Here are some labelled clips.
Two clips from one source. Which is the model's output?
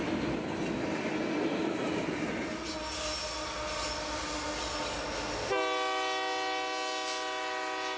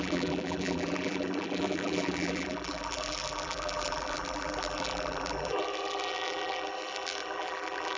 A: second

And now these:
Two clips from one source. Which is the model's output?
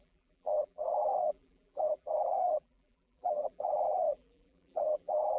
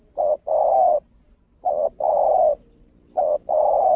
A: first